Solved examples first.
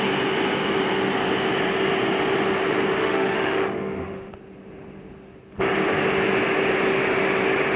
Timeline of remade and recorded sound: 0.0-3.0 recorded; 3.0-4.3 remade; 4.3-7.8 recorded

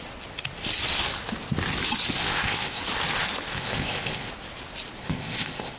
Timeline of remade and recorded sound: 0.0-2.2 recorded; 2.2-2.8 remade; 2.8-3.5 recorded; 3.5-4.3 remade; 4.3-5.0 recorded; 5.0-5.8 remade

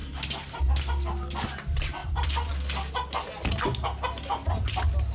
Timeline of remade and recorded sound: 0.0-0.6 remade; 0.6-2.0 recorded; 2.0-2.5 remade; 2.5-5.1 recorded

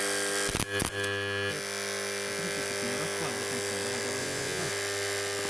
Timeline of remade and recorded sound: 0.0-4.2 recorded; 4.2-4.7 remade; 4.7-5.5 recorded

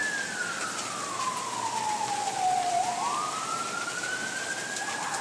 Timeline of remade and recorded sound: 0.0-1.2 recorded; 1.2-5.2 remade

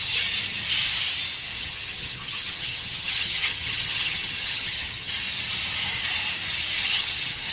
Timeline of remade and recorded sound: 0.0-1.6 recorded; 1.6-5.1 remade; 5.1-6.8 recorded; 6.8-7.5 remade

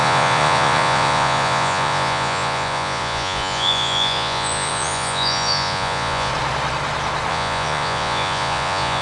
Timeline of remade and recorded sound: 0.0-6.3 remade; 6.3-7.3 recorded; 7.3-9.0 remade